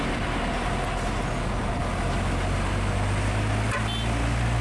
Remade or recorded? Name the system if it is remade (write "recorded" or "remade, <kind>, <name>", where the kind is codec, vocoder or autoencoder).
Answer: recorded